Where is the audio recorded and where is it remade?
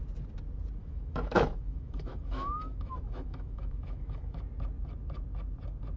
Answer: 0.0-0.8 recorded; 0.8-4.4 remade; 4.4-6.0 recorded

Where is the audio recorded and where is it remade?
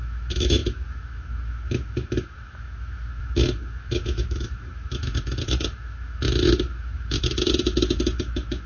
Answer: 0.0-8.7 remade